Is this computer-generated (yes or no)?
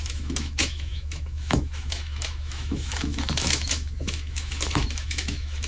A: yes